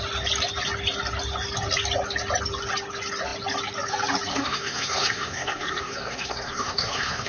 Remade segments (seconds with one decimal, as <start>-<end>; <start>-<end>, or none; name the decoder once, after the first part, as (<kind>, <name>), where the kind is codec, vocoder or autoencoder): 4.3-7.3 (codec, SNAC)